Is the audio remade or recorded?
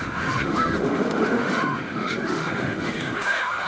remade